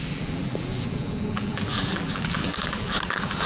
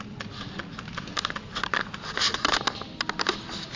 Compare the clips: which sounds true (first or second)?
second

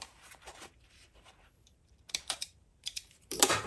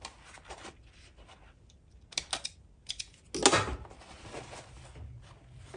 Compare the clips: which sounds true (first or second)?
second